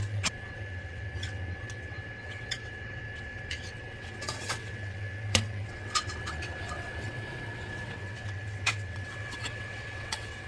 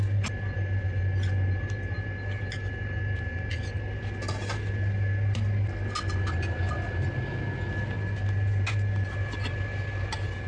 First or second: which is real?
second